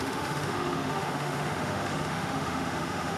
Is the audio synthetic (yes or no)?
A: yes